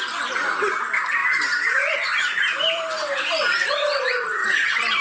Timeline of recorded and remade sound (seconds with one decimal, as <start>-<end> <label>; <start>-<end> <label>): 0.0-1.2 recorded; 1.2-4.0 remade; 4.0-4.4 recorded; 4.4-5.0 remade